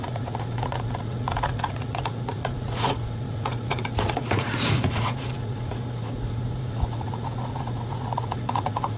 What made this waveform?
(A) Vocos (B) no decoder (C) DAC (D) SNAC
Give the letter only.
A